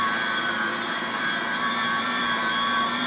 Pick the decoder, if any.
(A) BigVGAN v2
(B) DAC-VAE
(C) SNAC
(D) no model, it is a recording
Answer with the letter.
A